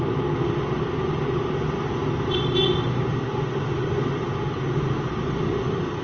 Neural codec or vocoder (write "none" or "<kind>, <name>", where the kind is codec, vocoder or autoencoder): none